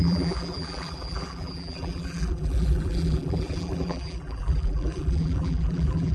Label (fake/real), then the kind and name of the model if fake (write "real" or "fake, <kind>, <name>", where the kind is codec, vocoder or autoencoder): fake, vocoder, BigVGAN v2